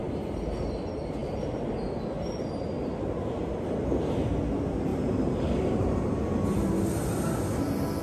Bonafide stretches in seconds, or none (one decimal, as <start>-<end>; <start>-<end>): 0.0-1.2; 1.7-4.9; 6.2-8.0